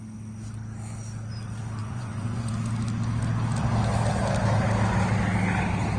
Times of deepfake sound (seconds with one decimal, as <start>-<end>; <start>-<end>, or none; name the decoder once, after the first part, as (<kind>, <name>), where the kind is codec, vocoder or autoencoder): 1.8-2.5 (vocoder, Vocos)